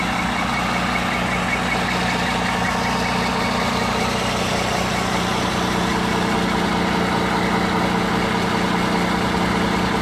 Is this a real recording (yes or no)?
yes